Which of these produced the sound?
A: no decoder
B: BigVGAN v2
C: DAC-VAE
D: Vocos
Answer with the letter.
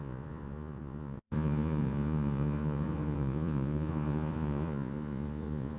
D